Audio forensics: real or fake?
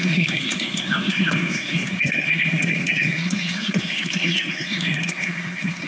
fake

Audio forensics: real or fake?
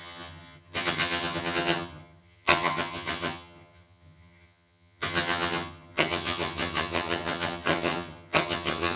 fake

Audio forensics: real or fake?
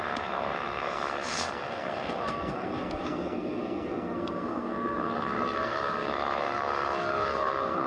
fake